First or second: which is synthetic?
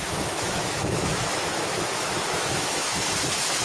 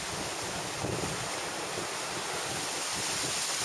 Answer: first